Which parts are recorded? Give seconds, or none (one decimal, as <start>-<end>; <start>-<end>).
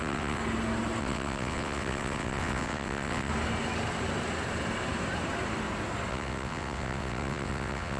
0.4-1.0; 3.3-6.1